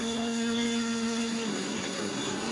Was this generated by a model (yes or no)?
yes